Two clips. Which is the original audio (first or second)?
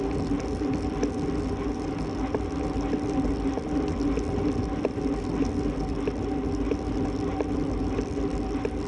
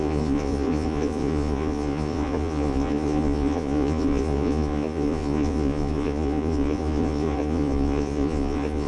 first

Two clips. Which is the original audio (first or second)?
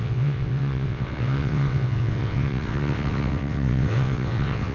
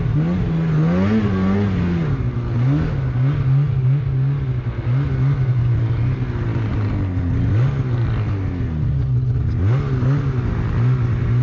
second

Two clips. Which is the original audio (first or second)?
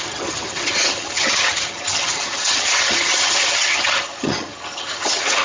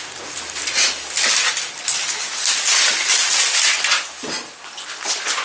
second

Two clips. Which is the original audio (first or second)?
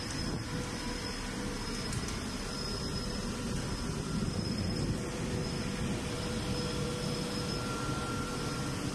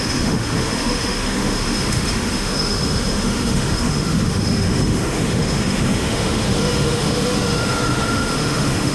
first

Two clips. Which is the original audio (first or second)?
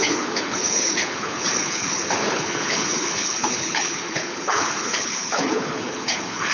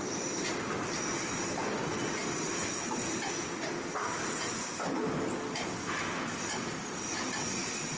second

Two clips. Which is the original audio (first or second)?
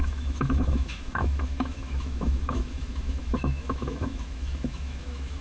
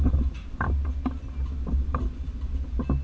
second